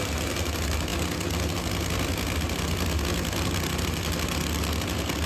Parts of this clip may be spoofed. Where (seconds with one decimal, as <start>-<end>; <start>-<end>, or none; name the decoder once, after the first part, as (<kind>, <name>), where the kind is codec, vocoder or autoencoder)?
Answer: none